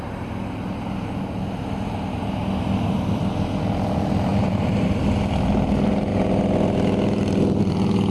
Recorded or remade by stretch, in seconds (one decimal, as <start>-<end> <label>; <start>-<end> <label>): 0.0-4.3 recorded; 4.3-5.5 remade; 5.5-8.1 recorded